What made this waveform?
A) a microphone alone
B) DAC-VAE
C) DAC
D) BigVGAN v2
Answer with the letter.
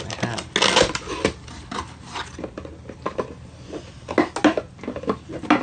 A